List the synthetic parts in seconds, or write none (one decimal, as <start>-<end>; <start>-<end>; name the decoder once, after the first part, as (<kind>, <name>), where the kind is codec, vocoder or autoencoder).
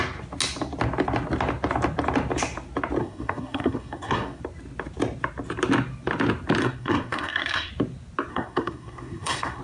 3.0-4.4 (codec, SNAC); 6.6-7.7; 8.3-9.6